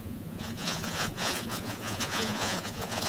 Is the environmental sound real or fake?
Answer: fake